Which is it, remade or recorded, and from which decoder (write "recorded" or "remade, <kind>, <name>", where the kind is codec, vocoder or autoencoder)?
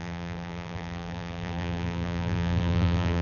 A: remade, vocoder, BigVGAN v2